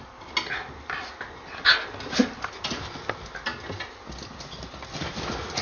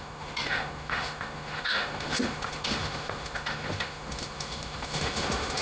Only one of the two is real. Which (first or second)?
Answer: first